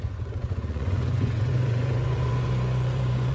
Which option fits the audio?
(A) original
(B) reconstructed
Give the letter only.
B